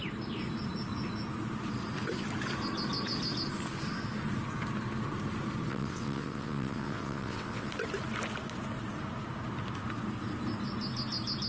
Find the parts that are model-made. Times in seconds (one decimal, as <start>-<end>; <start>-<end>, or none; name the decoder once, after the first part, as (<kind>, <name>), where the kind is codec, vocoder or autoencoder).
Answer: 5.7-7.7 (vocoder, WaveNeXt)